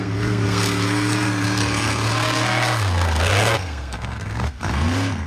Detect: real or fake fake